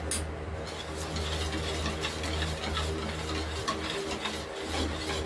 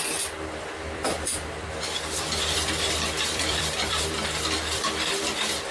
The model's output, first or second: second